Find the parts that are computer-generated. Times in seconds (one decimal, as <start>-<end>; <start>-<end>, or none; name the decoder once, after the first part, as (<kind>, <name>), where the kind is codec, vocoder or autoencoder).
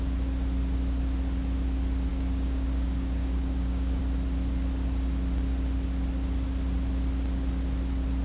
2.1-4.0 (codec, DAC)